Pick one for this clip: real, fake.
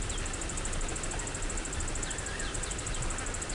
real